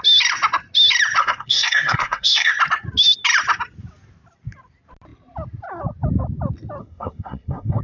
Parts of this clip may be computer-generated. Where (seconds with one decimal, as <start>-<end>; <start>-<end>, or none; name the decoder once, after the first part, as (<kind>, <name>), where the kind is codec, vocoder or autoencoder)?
1.2-2.5 (codec, SNAC); 6.8-7.8